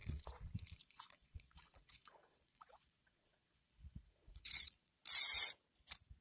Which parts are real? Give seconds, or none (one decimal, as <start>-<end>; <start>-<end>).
5.0-6.2